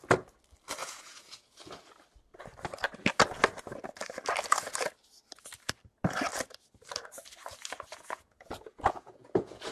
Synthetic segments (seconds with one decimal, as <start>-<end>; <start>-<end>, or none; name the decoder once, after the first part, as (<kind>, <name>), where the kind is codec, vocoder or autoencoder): 0.8-1.6 (vocoder, Vocos); 7.9-9.7